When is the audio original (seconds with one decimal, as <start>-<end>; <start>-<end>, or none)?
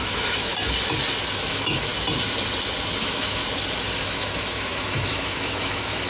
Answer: 0.5-1.3; 1.9-3.0; 3.4-4.0